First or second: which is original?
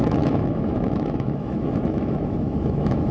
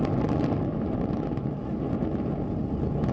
second